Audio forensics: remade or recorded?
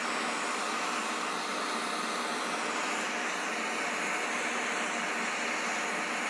recorded